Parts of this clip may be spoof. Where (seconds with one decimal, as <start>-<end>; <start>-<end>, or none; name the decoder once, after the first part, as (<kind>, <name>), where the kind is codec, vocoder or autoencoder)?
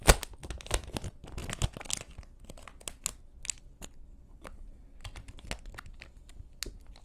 none